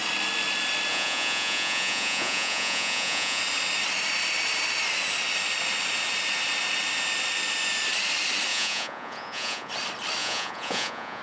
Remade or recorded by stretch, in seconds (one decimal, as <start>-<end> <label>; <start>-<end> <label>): 0.0-0.9 recorded; 0.9-3.4 remade; 3.4-8.5 recorded; 8.5-9.7 remade; 9.7-10.2 recorded; 10.2-11.2 remade